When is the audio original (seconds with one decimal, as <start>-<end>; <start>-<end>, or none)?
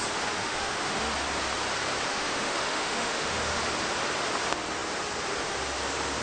0.0-0.4; 1.0-2.1; 3.6-6.2